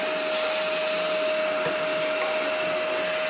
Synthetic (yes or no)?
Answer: no